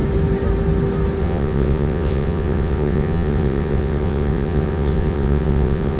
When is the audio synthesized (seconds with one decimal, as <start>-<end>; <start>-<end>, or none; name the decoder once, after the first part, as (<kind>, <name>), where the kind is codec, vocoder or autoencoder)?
1.2-6.0 (vocoder, WaveNeXt)